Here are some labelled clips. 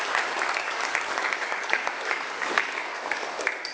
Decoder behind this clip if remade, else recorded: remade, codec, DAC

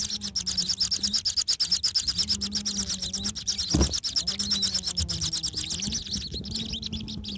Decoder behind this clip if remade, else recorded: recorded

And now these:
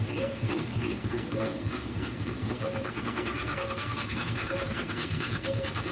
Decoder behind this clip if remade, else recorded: remade, codec, SNAC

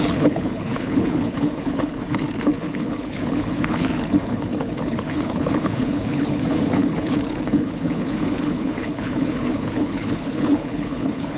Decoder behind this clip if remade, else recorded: remade, codec, HILCodec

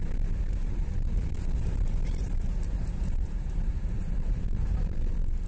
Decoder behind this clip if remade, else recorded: remade, vocoder, BigVGAN v2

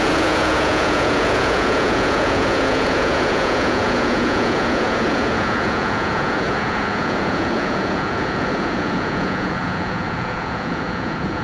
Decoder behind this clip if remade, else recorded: remade, vocoder, Vocos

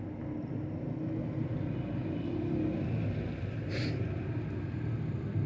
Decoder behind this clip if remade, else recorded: recorded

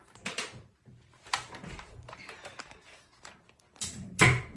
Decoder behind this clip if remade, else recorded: remade, vocoder, BigVGAN v2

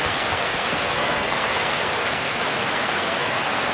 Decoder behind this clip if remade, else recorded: remade, codec, SNAC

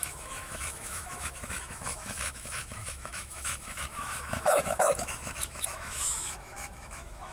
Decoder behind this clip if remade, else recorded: remade, autoencoder, DAC-VAE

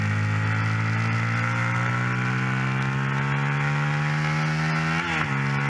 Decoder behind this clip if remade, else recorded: recorded